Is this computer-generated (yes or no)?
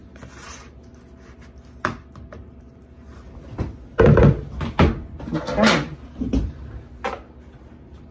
no